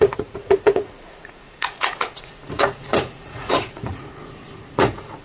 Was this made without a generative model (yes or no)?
no